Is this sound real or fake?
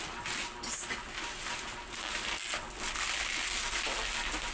real